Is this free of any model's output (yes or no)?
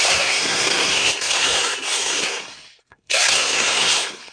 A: no